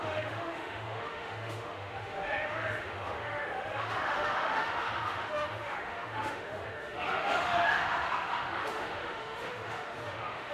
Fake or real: fake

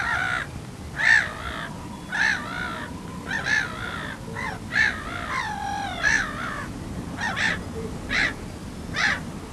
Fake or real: real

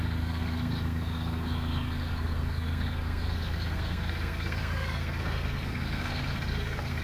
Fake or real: fake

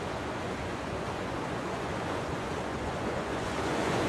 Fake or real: fake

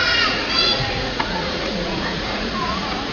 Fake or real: fake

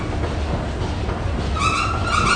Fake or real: real